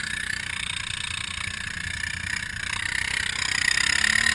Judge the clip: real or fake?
real